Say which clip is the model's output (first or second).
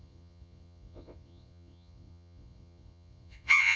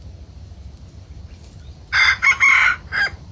first